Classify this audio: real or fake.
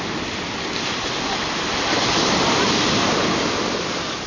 real